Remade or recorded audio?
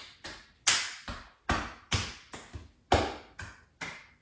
recorded